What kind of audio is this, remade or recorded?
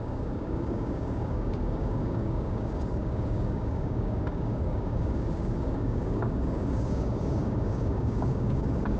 remade